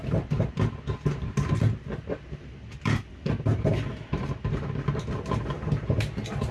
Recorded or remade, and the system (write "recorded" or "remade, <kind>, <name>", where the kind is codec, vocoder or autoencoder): recorded